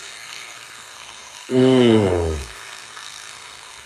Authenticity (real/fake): fake